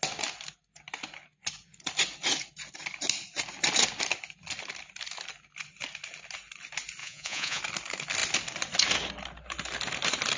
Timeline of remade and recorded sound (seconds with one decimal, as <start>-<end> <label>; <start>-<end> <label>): 0.0-7.0 recorded; 7.0-7.6 remade; 7.6-10.4 recorded